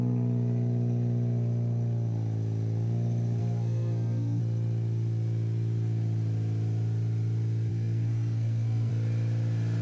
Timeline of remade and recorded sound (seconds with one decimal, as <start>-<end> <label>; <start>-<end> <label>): 0.0-3.4 recorded; 3.4-4.4 remade; 4.4-7.7 recorded; 7.7-8.9 remade; 8.9-9.8 recorded